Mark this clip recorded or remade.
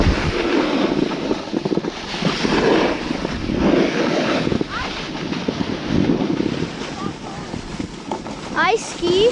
recorded